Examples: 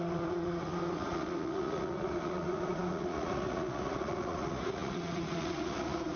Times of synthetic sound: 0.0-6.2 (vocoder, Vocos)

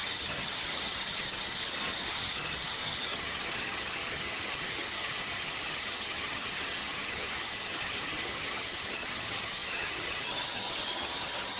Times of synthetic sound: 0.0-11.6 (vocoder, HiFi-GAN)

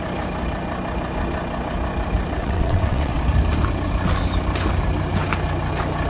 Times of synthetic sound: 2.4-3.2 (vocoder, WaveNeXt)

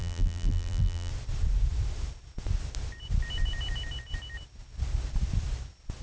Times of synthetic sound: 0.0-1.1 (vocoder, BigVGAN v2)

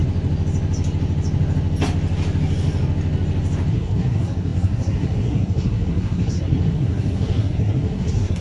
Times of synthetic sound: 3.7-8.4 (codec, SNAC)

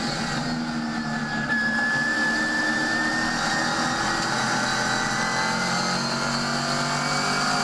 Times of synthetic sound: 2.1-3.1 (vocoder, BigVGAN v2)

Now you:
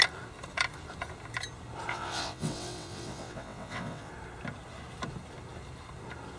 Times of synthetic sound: 1.9-4.1 (vocoder, WaveNeXt)

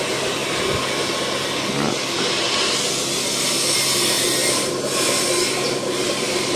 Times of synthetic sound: 4.4-5.1 (vocoder, BigVGAN v2)